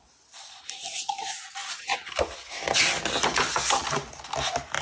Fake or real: real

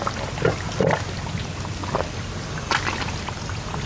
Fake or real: fake